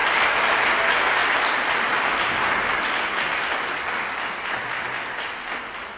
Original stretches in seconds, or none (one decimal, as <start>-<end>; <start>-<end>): 0.0-1.2; 4.8-6.0

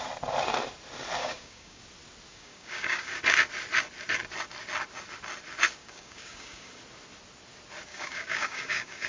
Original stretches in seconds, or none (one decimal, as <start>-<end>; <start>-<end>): 0.0-1.2; 1.8-2.3; 3.2-5.8; 6.7-7.9

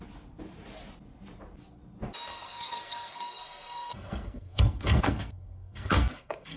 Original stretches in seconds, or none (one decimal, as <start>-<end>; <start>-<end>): 0.0-2.3

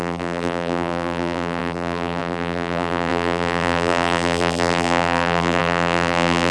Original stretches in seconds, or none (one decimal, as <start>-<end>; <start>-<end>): none

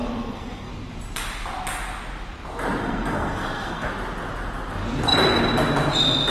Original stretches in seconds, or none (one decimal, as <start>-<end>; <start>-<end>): 0.7-2.8; 3.9-6.3

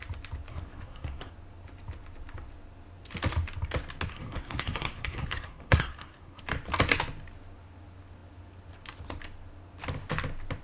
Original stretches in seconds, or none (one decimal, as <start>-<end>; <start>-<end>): 0.0-0.5; 1.3-4.1; 6.4-10.6